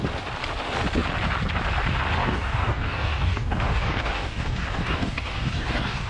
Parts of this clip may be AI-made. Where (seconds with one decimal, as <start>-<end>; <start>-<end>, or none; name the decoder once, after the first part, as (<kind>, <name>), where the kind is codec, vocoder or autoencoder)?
2.2-6.1 (codec, DAC)